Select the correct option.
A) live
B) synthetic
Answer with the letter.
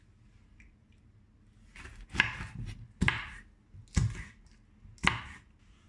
A